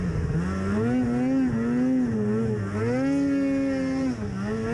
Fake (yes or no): no